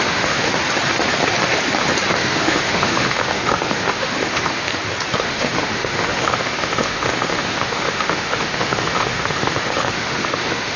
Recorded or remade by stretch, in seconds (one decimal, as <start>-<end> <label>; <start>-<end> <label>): 0.0-0.5 remade; 0.5-2.1 recorded; 2.1-4.7 remade; 4.7-5.2 recorded; 5.2-10.8 remade